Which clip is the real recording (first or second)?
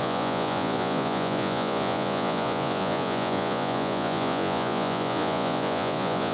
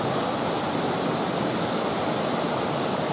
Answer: second